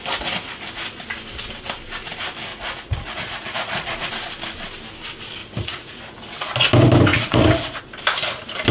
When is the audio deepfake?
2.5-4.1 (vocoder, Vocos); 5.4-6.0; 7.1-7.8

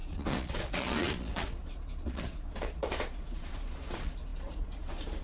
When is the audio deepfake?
0.0-5.2 (vocoder, Vocos)

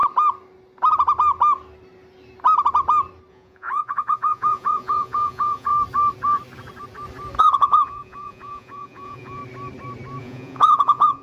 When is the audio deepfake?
3.3-5.7 (vocoder, Vocos); 7.4-9.4; 10.2-11.2

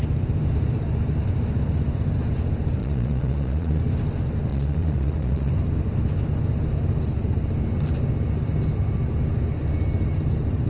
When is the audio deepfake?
2.8-3.8 (vocoder, Vocos); 4.5-5.5

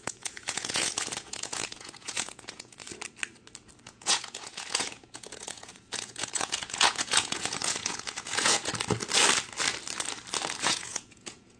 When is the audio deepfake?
0.0-2.8 (vocoder, Vocos); 3.8-8.7; 10.6-11.6

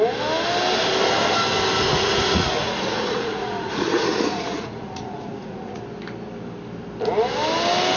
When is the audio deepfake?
1.9-5.8 (vocoder, Vocos)